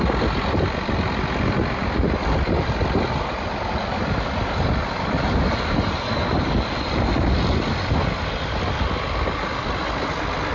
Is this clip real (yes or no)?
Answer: yes